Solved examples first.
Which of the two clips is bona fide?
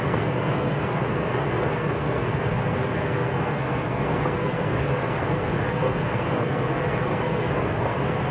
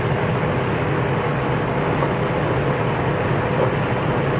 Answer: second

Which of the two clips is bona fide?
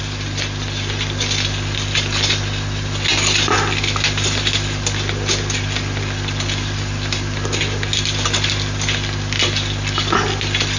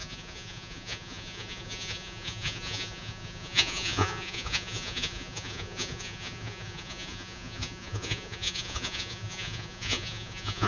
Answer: first